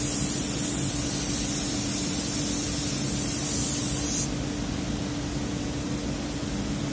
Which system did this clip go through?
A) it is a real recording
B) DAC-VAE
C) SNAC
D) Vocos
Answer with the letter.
A